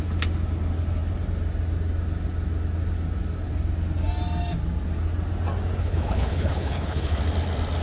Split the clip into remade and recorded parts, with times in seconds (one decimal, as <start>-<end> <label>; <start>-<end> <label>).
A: 0.0-5.8 recorded; 5.8-7.2 remade; 7.2-7.8 recorded